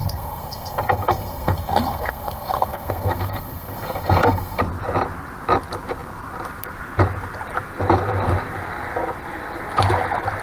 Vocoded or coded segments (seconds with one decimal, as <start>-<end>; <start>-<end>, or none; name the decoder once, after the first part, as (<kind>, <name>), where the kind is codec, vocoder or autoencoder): 0.0-4.6 (codec, SNAC)